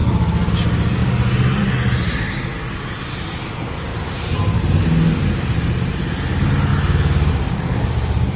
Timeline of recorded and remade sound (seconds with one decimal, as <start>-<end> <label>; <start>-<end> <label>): 0.0-8.4 recorded